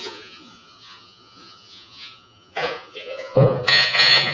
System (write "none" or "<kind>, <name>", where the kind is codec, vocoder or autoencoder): vocoder, Vocos